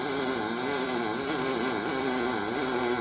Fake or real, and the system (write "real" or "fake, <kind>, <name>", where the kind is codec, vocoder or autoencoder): real